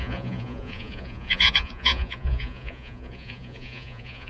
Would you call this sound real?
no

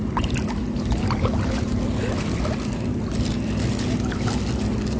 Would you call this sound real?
yes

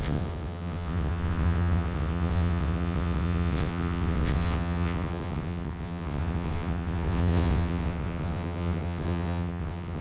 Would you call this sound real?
no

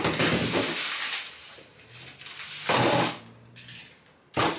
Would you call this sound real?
yes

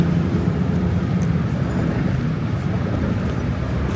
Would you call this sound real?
yes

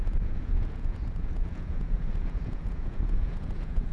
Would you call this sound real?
no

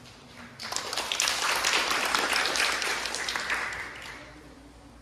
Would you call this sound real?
no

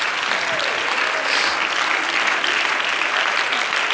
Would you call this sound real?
yes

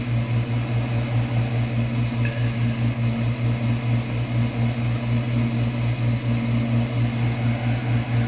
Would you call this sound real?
yes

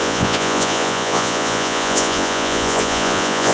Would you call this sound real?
no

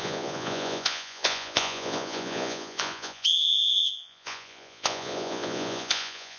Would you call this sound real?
no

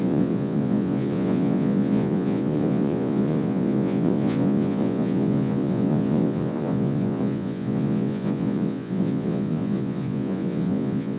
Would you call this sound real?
no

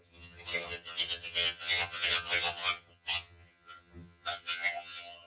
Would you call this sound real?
no